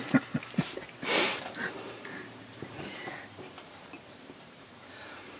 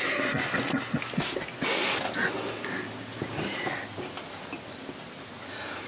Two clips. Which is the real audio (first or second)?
second